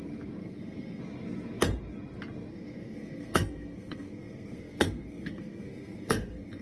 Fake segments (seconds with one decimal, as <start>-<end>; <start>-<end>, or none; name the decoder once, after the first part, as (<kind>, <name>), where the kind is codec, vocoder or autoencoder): 0.4-1.0 (codec, SNAC); 2.5-6.6